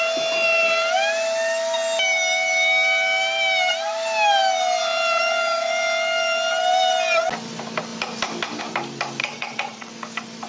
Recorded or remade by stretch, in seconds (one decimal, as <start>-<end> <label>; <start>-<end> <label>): 0.0-9.2 recorded; 9.2-9.9 remade; 9.9-10.5 recorded